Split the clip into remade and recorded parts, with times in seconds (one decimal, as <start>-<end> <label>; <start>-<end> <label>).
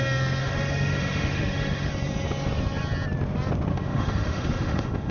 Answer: 0.0-0.4 recorded; 0.4-1.9 remade; 1.9-3.7 recorded; 3.7-5.1 remade